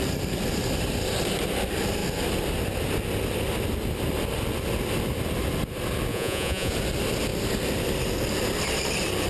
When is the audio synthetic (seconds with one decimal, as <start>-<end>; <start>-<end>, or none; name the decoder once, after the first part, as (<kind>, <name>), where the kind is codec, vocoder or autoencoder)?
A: 6.1-6.7 (vocoder, Vocos)